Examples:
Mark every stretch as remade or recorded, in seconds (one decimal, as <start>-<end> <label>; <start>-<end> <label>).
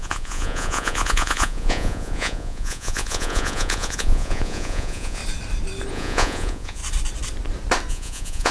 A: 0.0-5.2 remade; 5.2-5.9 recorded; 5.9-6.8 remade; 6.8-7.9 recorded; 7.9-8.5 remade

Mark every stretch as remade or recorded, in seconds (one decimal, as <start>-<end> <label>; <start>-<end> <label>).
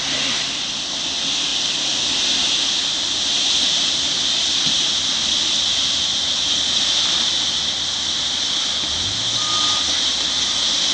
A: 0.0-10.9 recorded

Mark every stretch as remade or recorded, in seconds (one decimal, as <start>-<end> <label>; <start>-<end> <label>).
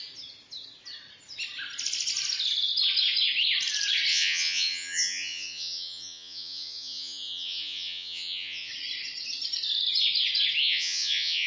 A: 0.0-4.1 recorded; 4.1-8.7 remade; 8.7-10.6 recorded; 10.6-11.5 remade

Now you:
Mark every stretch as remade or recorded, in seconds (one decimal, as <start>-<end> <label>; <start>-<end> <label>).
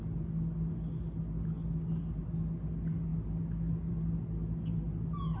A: 0.0-5.4 recorded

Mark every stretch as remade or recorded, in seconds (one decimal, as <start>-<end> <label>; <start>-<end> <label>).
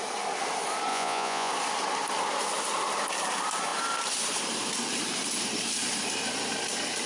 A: 0.0-0.9 recorded; 0.9-1.5 remade; 1.5-7.1 recorded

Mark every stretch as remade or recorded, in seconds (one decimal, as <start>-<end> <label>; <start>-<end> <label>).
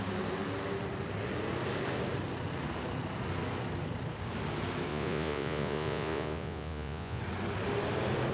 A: 0.0-4.9 recorded; 4.9-7.2 remade; 7.2-8.3 recorded